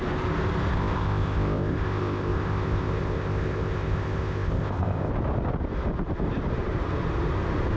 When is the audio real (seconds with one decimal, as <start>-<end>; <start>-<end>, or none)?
0.0-0.7; 5.1-7.8